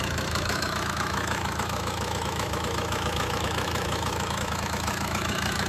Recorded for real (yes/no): no